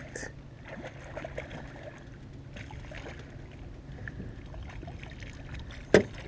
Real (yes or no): yes